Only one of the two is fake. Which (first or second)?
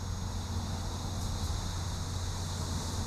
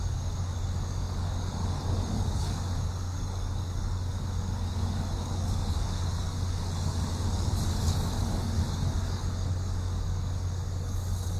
second